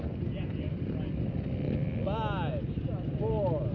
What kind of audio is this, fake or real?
real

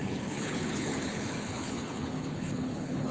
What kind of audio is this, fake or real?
fake